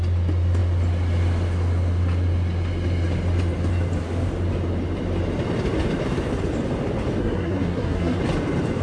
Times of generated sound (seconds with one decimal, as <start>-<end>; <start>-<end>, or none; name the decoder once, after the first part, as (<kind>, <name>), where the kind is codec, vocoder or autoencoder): 7.2-8.2 (codec, SNAC)